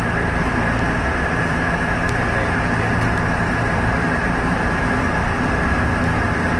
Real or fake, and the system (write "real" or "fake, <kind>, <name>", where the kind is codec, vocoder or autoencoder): real